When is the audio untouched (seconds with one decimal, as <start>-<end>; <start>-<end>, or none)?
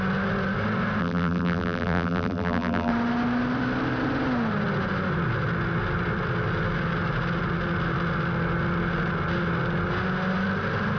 0.0-1.0; 2.9-11.0